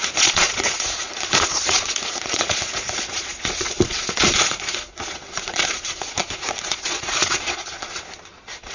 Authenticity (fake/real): fake